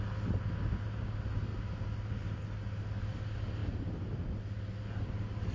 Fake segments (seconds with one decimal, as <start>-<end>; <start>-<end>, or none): none

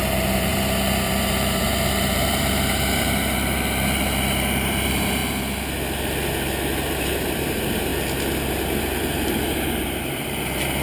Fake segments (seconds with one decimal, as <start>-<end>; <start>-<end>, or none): 0.0-5.2; 6.7-7.9; 8.8-10.8

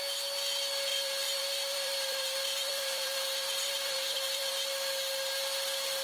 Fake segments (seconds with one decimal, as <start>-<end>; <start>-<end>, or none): 0.9-4.5

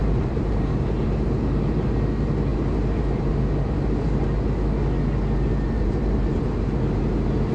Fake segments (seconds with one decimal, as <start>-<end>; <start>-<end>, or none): 0.0-0.8; 5.5-6.8

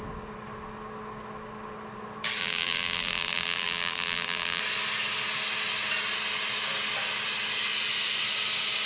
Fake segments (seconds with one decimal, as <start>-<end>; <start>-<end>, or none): 2.4-4.6

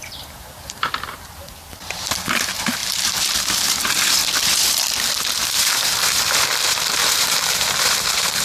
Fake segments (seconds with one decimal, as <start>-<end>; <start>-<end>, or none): 0.0-4.2; 5.7-8.4

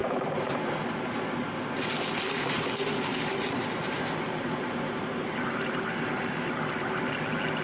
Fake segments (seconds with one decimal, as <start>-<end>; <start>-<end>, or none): 0.0-0.5; 3.1-6.3